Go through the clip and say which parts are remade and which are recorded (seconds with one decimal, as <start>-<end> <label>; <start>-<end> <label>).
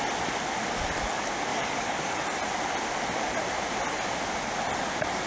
0.0-1.5 recorded; 1.5-2.2 remade; 2.2-5.3 recorded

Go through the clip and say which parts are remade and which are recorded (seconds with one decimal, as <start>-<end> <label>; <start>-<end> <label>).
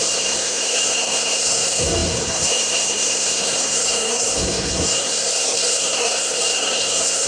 0.0-7.3 remade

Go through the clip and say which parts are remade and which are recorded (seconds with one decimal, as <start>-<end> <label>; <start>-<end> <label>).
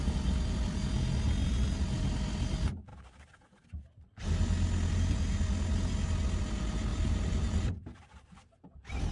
0.0-6.9 recorded; 6.9-8.4 remade; 8.4-9.1 recorded